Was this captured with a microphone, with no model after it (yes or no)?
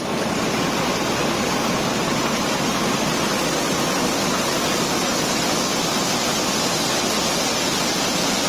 yes